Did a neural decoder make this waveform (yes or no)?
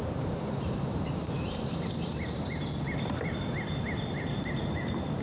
yes